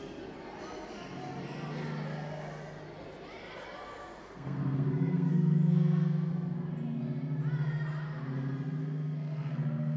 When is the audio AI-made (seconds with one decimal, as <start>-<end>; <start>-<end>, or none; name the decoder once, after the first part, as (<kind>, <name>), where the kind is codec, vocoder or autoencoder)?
4.2-6.3 (codec, SNAC); 8.8-10.0